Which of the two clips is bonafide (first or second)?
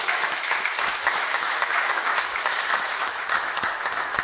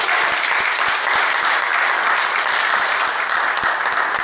second